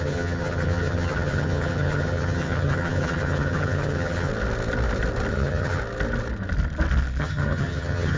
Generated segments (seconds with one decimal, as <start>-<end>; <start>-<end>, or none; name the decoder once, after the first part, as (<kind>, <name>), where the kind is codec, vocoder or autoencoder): 0.0-4.3 (vocoder, HiFi-GAN); 5.3-5.8; 7.2-8.2